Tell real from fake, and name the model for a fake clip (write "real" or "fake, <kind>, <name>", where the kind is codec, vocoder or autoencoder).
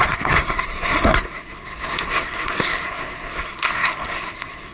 fake, codec, SNAC